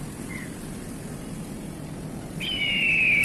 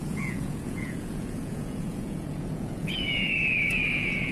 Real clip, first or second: first